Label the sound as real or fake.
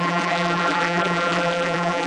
fake